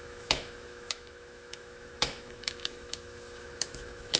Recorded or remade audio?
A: remade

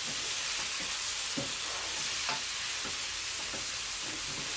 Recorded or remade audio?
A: recorded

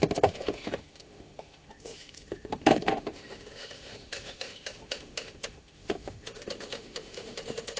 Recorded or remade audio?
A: remade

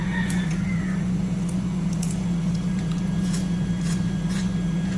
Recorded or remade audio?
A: remade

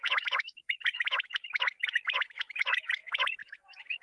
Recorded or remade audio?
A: remade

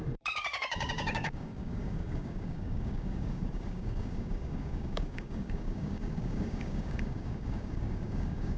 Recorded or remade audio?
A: remade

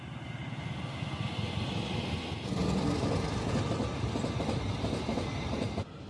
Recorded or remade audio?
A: recorded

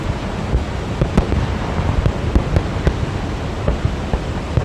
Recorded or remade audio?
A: recorded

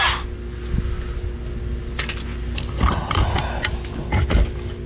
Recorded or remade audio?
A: recorded